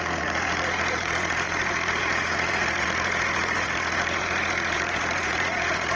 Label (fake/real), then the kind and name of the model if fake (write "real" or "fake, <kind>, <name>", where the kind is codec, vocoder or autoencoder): fake, vocoder, Vocos